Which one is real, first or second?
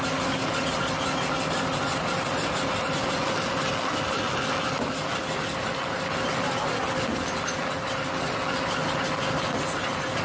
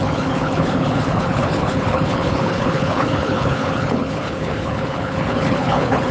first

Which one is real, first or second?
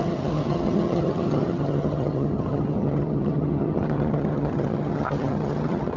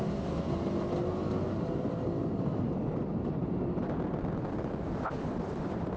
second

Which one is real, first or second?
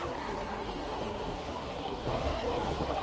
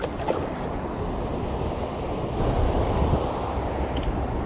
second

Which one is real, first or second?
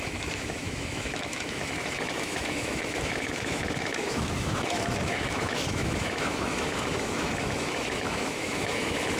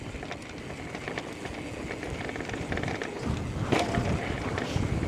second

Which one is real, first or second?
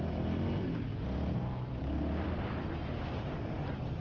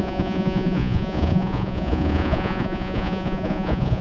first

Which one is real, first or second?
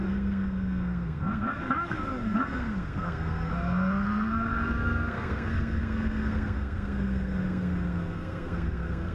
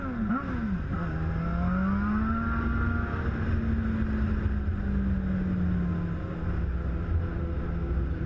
second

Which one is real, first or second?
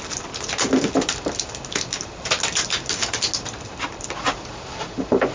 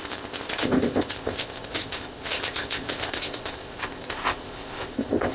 first